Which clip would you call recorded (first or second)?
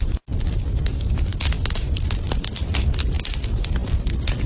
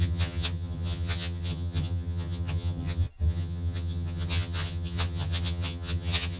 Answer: first